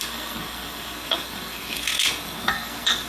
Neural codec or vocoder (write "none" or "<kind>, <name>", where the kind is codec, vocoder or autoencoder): codec, SNAC